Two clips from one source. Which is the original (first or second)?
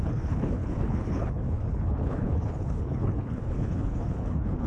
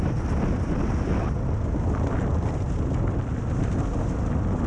second